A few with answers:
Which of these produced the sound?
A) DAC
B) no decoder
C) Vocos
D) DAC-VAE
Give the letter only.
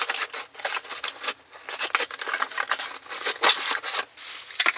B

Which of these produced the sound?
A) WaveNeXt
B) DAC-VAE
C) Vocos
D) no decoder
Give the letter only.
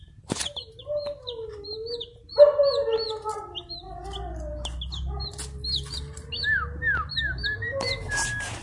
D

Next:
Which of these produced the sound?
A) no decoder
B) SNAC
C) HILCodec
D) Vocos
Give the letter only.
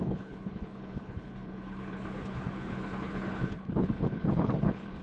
C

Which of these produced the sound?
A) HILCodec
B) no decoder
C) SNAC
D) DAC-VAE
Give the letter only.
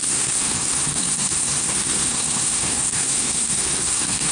C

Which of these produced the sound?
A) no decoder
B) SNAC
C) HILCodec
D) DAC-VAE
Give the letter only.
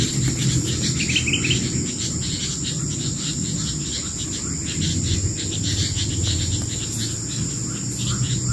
A